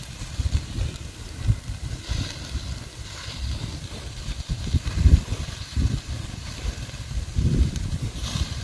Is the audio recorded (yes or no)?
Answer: no